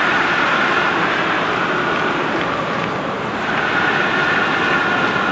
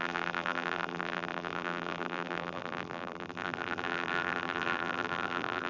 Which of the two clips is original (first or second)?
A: first